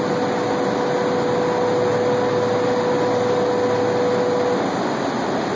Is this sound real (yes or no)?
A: yes